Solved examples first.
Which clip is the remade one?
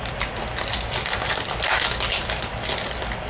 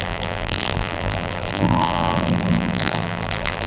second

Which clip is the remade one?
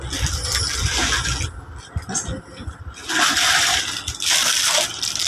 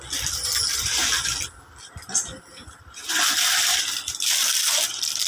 second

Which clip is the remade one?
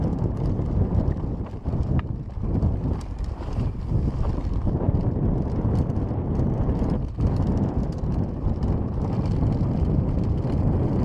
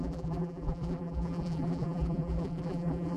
second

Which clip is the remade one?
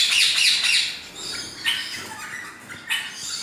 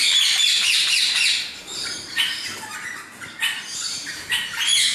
second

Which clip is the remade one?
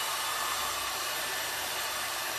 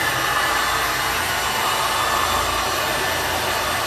first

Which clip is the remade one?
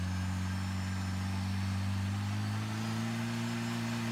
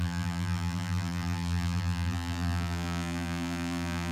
second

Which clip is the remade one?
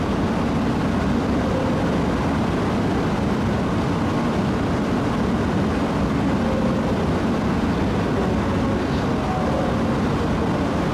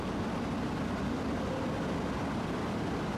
second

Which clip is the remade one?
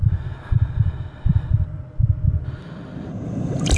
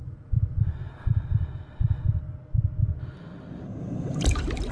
first